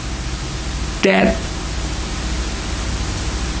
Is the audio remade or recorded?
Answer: recorded